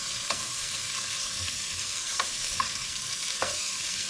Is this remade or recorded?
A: remade